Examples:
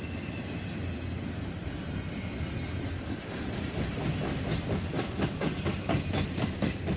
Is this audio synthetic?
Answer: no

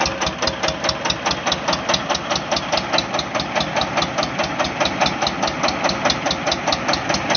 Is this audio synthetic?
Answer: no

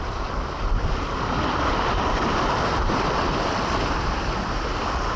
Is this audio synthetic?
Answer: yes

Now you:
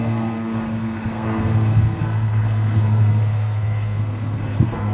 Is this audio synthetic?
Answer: yes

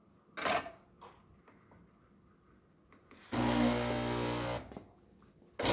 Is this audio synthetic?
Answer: no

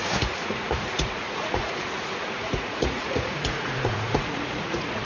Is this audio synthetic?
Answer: yes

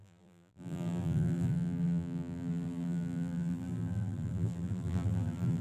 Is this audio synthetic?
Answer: yes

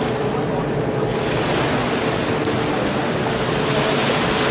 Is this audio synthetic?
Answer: no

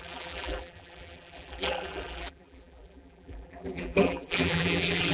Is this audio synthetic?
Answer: yes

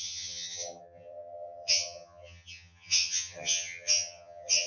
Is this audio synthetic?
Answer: yes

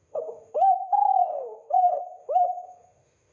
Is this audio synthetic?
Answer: yes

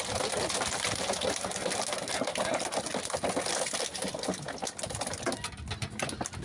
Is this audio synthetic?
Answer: no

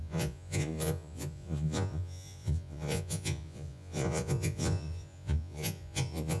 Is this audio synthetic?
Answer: yes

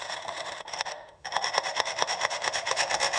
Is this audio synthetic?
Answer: yes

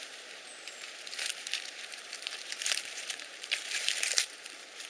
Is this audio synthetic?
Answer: yes